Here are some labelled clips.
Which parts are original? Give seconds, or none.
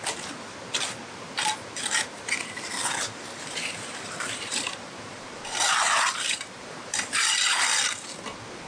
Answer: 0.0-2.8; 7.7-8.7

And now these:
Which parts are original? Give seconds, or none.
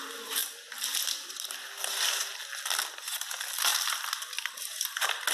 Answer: 0.0-3.7; 4.5-5.3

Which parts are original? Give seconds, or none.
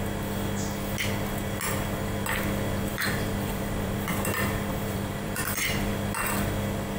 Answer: 0.0-2.9; 5.9-7.0